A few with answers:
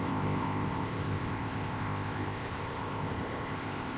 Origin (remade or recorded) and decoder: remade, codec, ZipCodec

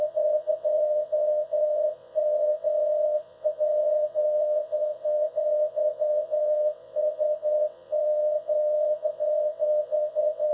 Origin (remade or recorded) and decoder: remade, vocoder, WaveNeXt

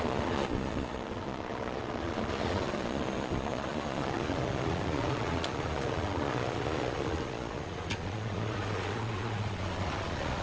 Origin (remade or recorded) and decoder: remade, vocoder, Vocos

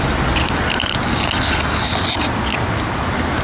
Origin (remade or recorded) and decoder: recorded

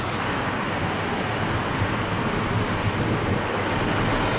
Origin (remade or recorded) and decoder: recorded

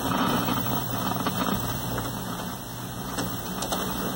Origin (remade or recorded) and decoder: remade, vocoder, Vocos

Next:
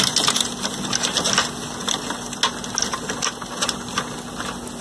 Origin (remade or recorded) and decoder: recorded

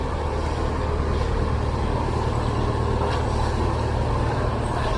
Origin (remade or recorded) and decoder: recorded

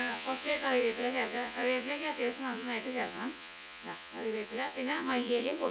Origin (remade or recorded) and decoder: remade, vocoder, Vocos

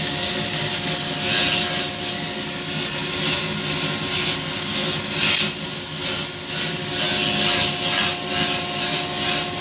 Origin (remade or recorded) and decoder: recorded